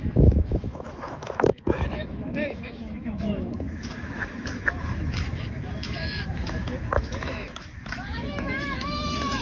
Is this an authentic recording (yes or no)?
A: no